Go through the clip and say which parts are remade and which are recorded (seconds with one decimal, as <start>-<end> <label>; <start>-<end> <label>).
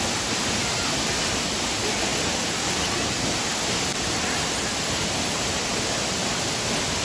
0.0-3.9 recorded; 3.9-5.6 remade; 5.6-7.0 recorded